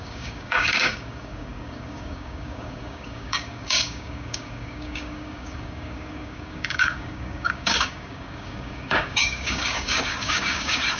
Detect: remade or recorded remade